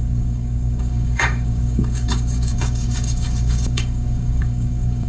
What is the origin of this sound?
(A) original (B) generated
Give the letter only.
B